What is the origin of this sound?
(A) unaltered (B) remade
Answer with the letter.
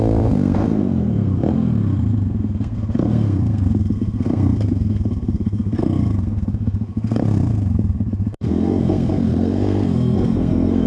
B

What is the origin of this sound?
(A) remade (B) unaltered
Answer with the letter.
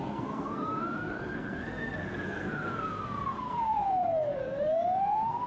A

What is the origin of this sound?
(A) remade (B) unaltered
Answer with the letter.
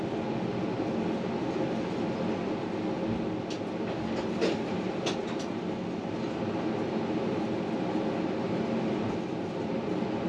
B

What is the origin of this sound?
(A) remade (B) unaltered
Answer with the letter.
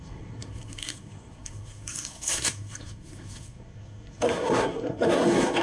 A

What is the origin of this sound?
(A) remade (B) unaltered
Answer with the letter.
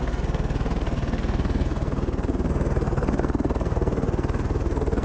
A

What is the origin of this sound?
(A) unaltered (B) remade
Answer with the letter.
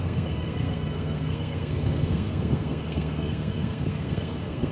B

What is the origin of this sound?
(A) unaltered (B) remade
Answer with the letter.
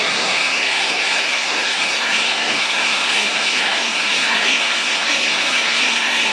B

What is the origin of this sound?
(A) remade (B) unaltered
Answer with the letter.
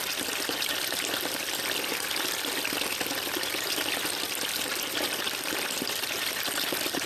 B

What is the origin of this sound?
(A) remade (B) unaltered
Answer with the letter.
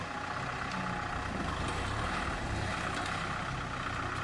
B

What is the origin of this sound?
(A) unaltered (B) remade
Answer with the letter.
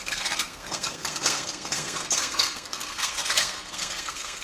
B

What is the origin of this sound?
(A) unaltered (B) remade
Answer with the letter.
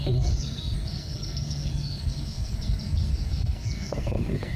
B